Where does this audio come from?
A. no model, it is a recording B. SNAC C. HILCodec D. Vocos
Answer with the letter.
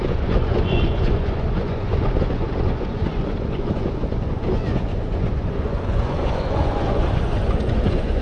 D